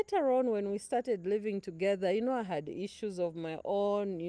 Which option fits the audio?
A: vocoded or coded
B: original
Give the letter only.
B